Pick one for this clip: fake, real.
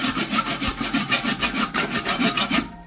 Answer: fake